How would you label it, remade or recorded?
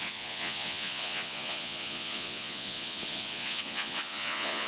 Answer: remade